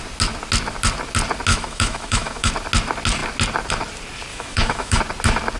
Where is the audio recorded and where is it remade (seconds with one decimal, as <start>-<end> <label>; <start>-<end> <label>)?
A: 0.0-1.5 recorded; 1.5-2.5 remade; 2.5-4.3 recorded; 4.3-5.0 remade; 5.0-5.6 recorded